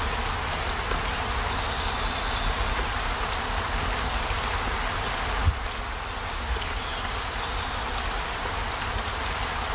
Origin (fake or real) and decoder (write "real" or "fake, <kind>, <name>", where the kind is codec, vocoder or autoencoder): real